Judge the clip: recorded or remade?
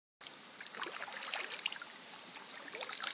recorded